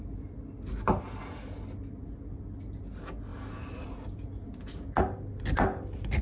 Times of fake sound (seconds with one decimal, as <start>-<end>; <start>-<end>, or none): none